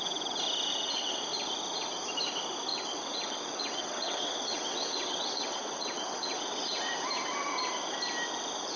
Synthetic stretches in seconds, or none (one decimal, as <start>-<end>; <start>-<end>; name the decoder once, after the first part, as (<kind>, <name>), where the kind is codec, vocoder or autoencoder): 0.7-1.2 (vocoder, WaveNeXt); 2.7-7.0